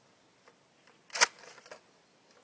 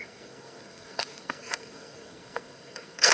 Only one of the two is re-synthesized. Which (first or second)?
second